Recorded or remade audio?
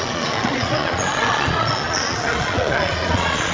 remade